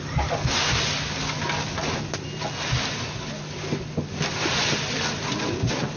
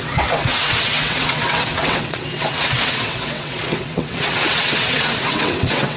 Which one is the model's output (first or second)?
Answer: second